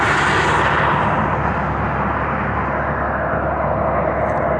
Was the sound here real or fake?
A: real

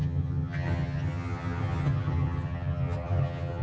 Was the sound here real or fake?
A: fake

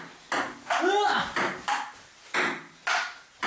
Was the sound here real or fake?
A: real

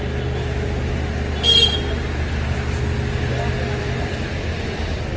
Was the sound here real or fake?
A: real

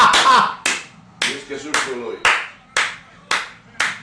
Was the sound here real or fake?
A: real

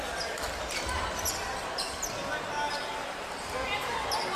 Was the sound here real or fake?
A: real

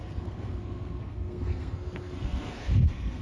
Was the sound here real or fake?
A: fake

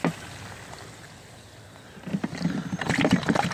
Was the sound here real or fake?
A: real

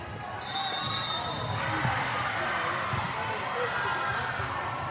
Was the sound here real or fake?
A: real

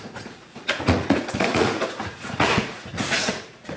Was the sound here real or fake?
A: fake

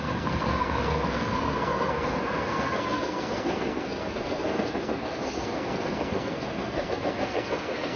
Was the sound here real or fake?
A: fake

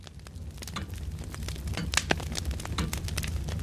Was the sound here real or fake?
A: real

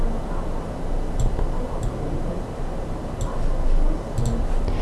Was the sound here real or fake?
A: real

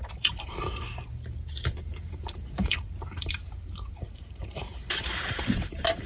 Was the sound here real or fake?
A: fake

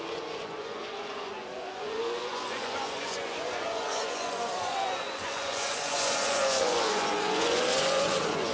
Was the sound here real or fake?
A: fake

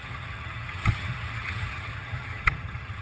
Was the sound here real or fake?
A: fake